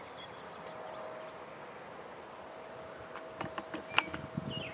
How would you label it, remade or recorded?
recorded